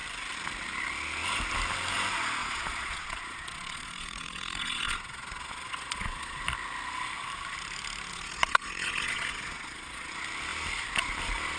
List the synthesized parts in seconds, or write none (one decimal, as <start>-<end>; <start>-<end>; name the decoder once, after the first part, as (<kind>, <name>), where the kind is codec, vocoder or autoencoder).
2.4-6.4 (vocoder, Vocos); 8.1-10.1